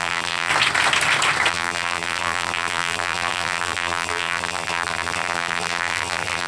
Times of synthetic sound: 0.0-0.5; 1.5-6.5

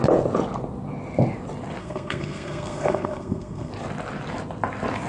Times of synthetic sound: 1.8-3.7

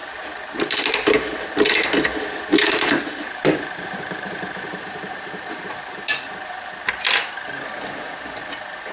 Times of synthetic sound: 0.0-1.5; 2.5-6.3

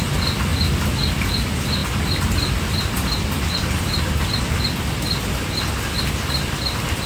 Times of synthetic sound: none

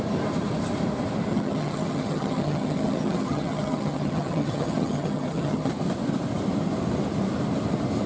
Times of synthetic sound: 1.3-5.7